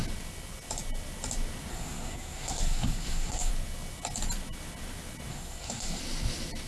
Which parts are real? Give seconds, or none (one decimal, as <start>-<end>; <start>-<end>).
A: 0.0-1.7; 3.5-5.3; 6.0-6.7